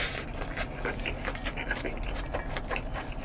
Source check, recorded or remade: recorded